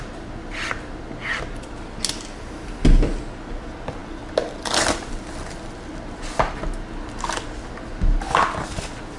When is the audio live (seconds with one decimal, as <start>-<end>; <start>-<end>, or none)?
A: 0.0-9.2